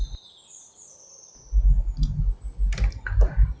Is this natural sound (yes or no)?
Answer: yes